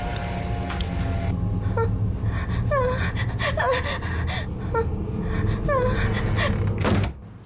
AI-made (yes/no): no